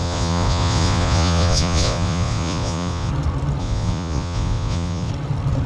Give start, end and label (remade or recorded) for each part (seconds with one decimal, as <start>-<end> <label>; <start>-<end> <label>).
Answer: 0.0-3.1 remade; 3.1-3.6 recorded; 3.6-5.1 remade; 5.1-5.7 recorded